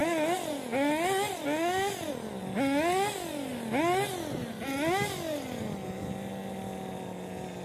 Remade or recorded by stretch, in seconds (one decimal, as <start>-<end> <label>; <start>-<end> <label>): 0.0-7.6 recorded